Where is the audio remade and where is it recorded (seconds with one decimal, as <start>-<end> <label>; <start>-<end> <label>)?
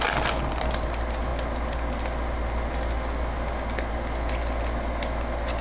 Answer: 0.0-5.6 recorded